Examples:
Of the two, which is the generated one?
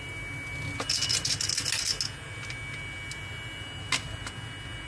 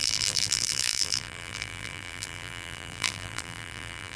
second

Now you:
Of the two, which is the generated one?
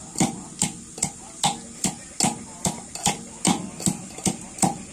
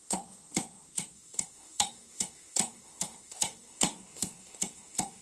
second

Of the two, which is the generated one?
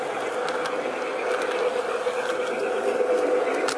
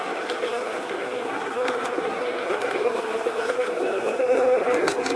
second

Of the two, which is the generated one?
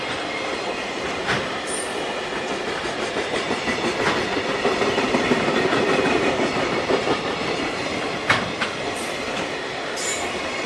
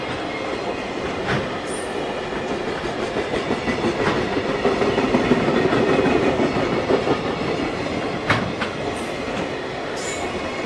first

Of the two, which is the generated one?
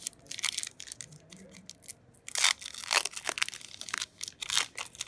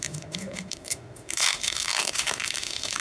second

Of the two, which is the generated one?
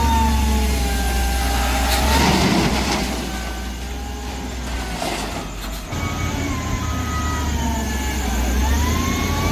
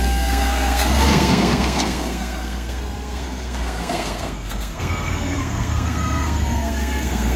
second